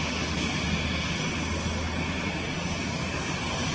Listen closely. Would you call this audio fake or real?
real